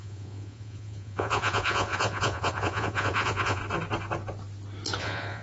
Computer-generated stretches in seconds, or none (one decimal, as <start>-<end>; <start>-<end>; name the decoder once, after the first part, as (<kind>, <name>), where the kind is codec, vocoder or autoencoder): 0.0-3.6 (vocoder, Vocos); 5.0-5.4